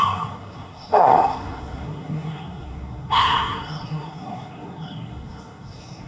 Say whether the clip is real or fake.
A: fake